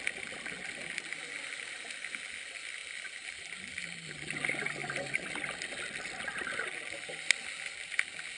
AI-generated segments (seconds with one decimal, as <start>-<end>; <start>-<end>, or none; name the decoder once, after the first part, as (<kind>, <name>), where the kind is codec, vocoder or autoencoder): none